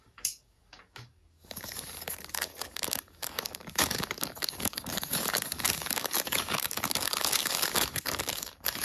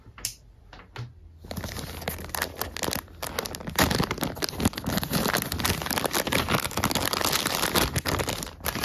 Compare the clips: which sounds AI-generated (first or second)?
first